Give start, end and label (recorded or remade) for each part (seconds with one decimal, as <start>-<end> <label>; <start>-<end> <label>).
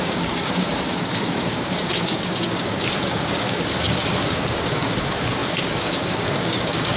0.0-7.0 remade